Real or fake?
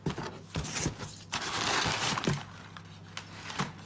real